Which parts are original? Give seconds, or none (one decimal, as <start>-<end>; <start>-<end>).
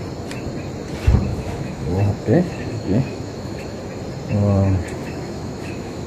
0.0-1.3; 3.8-5.0